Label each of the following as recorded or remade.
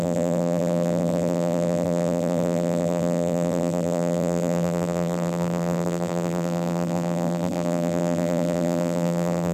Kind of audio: remade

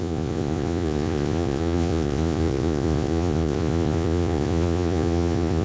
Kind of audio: remade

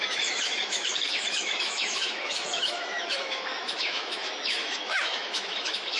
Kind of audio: remade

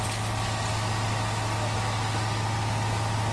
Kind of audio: recorded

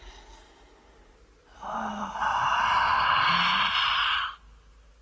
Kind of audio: recorded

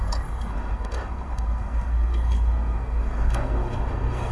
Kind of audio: remade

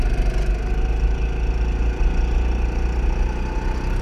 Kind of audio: recorded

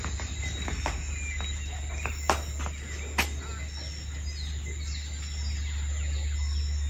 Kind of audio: recorded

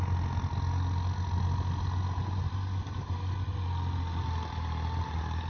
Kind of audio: recorded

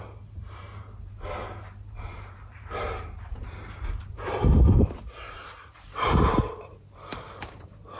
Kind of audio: remade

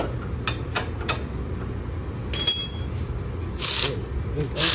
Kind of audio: recorded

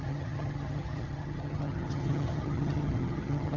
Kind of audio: remade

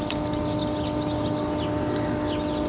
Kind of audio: recorded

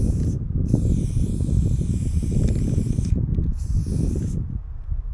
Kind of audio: recorded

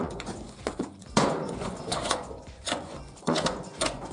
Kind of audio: remade